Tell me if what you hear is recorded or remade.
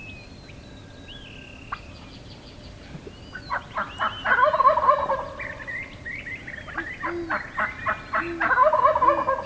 recorded